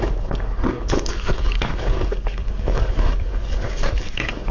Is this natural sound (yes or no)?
no